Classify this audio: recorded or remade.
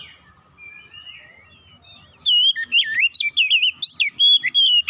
recorded